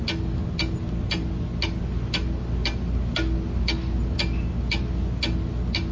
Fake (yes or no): no